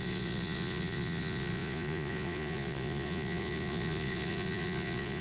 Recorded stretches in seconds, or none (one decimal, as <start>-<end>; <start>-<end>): none